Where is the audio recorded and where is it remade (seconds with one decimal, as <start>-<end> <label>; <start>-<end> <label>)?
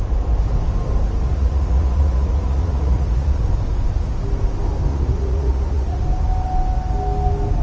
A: 0.0-1.3 recorded; 1.3-3.4 remade; 3.4-4.9 recorded; 4.9-6.0 remade; 6.0-7.6 recorded